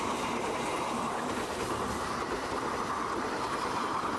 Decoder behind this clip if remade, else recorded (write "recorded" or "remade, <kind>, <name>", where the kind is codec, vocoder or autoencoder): recorded